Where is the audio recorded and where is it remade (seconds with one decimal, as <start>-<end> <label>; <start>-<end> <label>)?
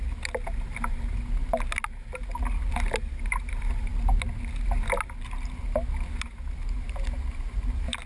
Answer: 0.0-8.1 recorded